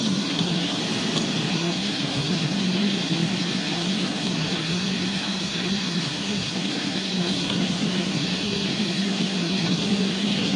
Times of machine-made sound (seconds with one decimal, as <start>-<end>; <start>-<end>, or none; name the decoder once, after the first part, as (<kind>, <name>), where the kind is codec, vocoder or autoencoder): 0.0-0.8 (codec, SNAC); 1.5-10.6